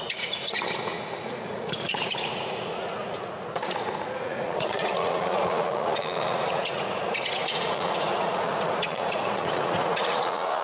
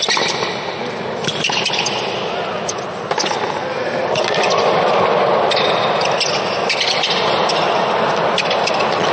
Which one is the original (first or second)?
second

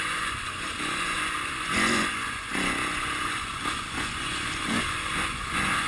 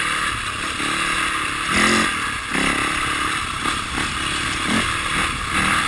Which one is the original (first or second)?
second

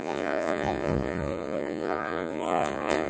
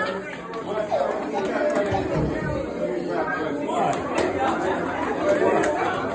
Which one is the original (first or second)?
second